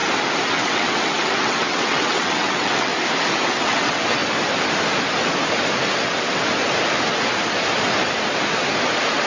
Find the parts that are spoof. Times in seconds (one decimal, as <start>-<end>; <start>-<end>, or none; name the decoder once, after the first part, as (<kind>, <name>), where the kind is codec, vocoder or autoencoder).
0.5-2.9 (vocoder, WaveNeXt); 3.5-4.2